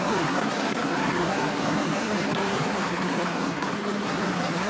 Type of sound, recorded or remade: remade